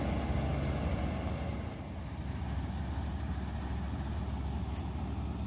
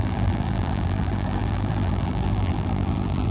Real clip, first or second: first